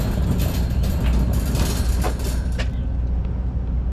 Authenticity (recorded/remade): recorded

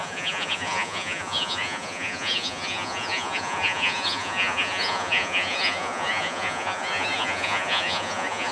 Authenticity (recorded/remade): remade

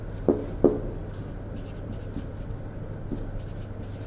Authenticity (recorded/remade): recorded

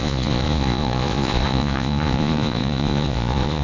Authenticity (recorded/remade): remade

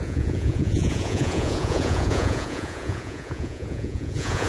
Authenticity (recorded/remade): remade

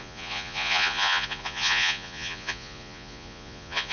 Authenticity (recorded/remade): remade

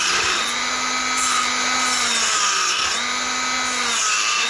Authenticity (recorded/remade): recorded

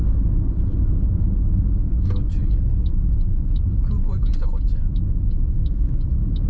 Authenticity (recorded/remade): recorded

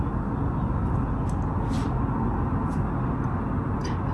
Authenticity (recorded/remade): recorded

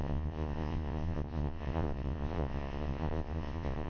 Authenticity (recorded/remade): remade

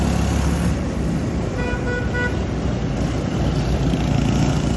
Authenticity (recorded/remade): recorded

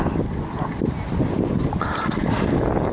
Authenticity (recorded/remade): recorded